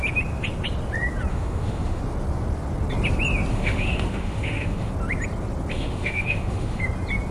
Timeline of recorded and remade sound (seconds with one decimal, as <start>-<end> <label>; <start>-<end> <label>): 0.0-1.3 recorded; 1.3-2.0 remade; 2.0-3.5 recorded; 3.5-4.9 remade; 4.9-5.7 recorded; 5.7-6.8 remade; 6.8-7.3 recorded